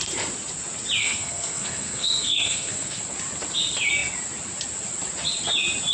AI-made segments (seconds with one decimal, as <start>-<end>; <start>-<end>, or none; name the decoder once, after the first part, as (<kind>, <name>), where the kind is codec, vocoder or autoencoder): 1.0-3.0 (codec, SNAC)